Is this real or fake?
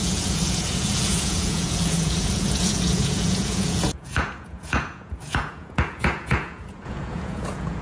fake